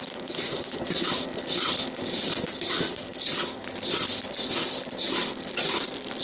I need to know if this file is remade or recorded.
remade